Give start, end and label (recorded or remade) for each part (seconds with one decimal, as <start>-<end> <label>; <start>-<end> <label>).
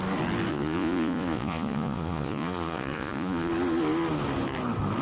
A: 0.0-0.5 recorded; 0.5-3.5 remade; 3.5-5.0 recorded